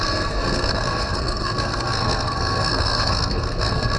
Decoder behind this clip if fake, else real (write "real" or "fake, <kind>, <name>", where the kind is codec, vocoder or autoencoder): fake, codec, SNAC